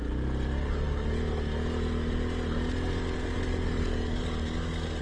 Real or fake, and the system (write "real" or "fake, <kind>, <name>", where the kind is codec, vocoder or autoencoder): real